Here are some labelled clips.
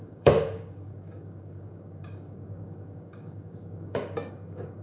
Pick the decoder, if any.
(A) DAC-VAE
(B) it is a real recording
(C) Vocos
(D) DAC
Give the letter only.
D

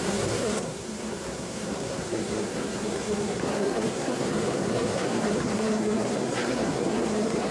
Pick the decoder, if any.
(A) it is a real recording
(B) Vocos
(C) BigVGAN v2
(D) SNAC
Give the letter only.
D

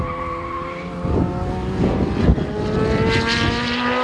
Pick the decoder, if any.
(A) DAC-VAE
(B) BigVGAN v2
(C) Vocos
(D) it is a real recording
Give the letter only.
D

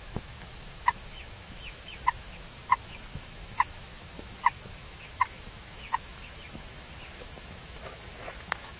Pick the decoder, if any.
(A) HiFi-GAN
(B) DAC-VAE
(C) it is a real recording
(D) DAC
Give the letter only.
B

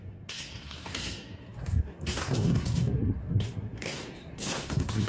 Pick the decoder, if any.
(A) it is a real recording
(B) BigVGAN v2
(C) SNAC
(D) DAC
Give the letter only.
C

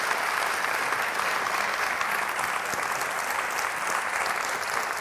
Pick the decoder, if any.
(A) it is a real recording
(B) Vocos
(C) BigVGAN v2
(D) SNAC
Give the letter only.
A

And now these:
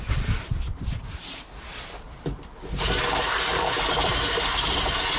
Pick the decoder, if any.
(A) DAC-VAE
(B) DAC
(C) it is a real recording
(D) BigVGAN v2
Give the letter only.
C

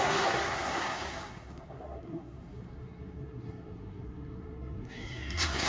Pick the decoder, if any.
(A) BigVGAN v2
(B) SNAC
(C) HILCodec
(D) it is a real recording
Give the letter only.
B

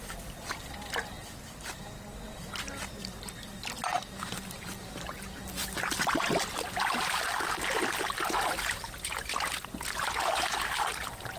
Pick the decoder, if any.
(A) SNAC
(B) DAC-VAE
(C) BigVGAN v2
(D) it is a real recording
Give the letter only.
D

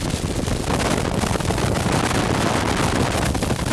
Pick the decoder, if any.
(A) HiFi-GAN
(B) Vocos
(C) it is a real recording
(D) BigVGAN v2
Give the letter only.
C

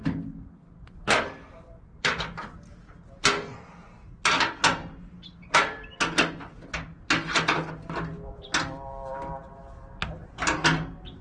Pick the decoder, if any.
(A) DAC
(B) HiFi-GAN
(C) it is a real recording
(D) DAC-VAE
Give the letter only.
C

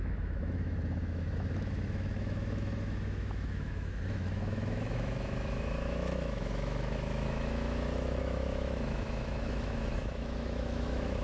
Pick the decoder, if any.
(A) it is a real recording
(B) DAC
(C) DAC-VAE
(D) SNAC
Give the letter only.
C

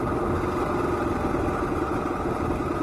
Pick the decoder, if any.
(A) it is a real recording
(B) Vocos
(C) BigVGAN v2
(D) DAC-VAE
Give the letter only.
A